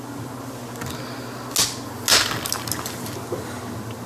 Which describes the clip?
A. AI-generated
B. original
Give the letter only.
B